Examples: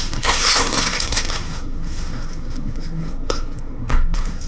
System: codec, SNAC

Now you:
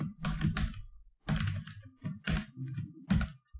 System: none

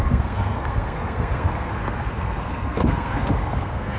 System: codec, SNAC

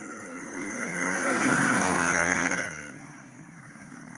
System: codec, SNAC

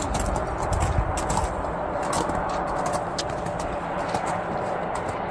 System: none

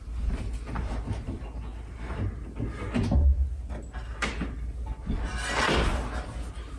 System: none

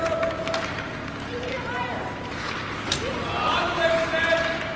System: none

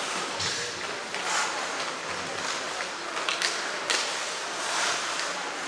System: none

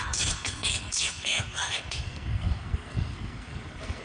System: codec, SNAC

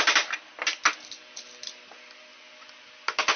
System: none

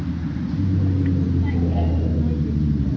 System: none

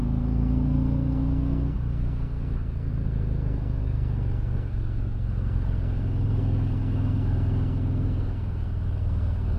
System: codec, SNAC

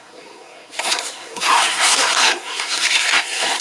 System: codec, SNAC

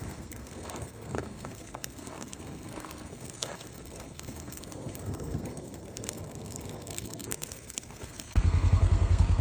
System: codec, SNAC